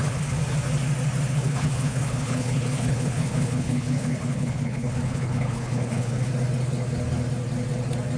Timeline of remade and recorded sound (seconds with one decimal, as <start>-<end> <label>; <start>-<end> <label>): 0.0-0.4 remade; 0.4-1.3 recorded; 1.3-6.3 remade; 6.3-8.2 recorded